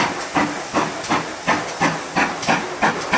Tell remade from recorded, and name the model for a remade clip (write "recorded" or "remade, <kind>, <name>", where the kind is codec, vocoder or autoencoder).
recorded